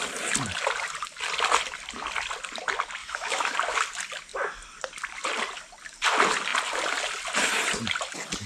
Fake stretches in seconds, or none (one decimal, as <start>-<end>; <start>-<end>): 3.0-3.5